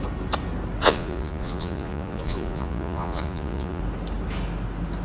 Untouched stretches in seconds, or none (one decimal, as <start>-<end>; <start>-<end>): 0.0-0.8; 3.8-5.0